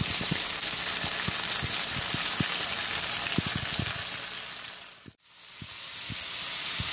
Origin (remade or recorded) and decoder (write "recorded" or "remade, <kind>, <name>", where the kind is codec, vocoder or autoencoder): recorded